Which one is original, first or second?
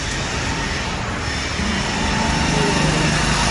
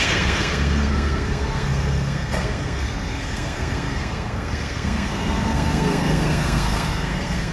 first